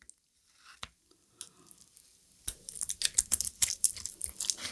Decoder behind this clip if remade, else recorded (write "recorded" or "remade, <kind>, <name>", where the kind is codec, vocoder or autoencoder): recorded